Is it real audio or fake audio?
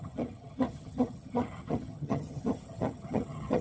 fake